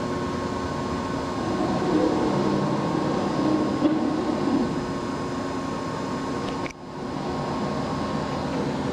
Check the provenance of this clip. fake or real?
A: real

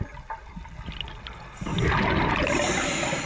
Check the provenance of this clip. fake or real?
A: real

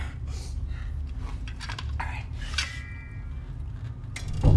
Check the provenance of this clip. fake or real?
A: real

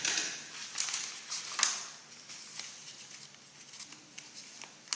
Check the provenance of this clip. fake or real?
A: real